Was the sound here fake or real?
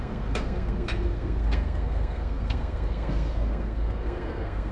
fake